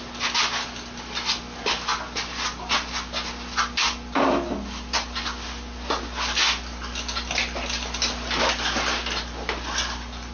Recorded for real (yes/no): yes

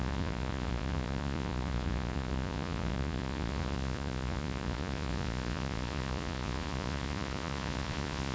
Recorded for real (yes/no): no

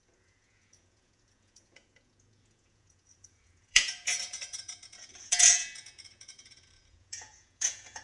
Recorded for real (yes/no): no